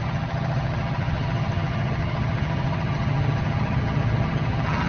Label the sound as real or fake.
fake